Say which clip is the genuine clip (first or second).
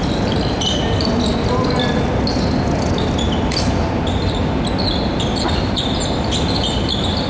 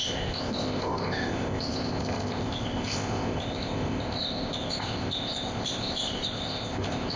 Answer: first